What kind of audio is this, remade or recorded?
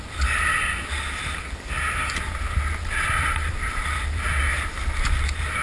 recorded